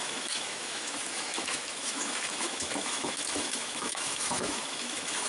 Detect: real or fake fake